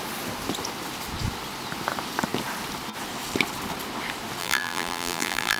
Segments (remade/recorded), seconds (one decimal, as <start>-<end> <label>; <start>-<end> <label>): 0.0-4.4 recorded; 4.4-5.6 remade